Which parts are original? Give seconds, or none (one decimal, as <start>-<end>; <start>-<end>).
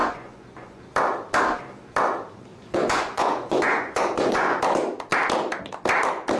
0.8-2.5; 4.6-6.4